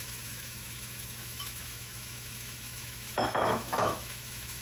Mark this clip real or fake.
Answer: fake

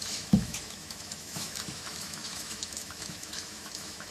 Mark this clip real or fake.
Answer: fake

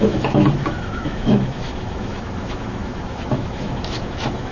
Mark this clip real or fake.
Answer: fake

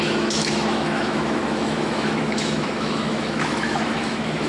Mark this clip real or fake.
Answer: fake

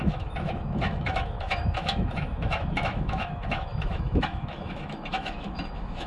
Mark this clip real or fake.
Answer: fake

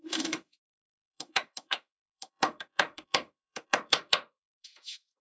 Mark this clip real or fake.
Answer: fake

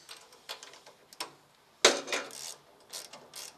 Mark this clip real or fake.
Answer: real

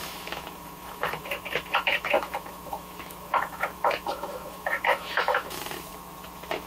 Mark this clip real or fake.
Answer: fake